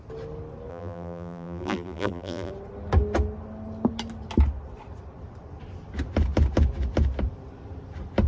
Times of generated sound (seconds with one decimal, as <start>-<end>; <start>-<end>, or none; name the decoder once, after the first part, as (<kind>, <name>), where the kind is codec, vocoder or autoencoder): 0.7-2.5 (vocoder, BigVGAN v2)